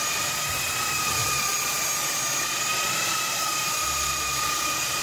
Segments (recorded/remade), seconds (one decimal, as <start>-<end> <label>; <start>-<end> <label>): 0.0-1.2 recorded; 1.2-1.9 remade; 1.9-2.7 recorded; 2.7-5.0 remade